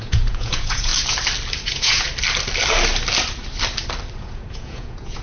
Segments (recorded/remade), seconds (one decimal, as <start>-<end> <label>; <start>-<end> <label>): 0.0-0.9 remade; 0.9-1.7 recorded; 1.7-2.1 remade; 2.1-4.2 recorded; 4.2-5.2 remade